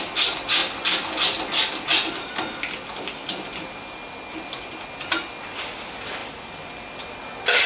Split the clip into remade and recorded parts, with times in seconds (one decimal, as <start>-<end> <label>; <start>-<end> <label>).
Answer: 0.0-7.7 recorded